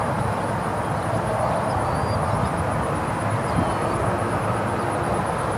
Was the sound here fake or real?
real